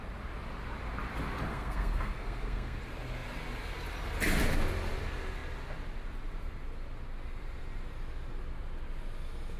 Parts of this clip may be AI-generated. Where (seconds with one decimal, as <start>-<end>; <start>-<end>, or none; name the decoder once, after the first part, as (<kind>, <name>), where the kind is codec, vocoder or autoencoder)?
1.5-2.8 (codec, SNAC)